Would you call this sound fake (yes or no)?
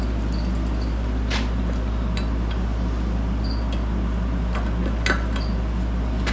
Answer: no